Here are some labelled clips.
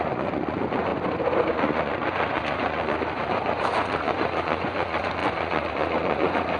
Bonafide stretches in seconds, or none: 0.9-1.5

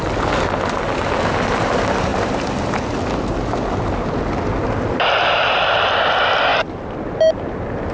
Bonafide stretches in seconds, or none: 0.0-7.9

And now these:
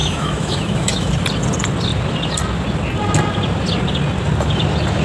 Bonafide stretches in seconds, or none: 1.1-5.0

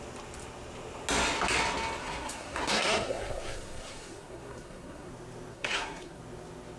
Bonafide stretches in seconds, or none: 0.0-2.0; 5.1-5.5; 6.2-6.8

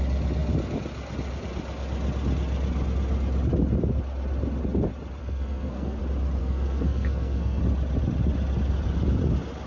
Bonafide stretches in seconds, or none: 0.0-5.2; 6.0-6.4; 7.6-9.7

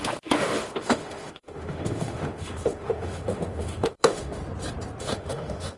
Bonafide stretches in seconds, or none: 4.4-5.0

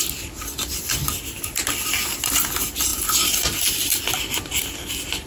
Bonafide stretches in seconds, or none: 0.0-5.3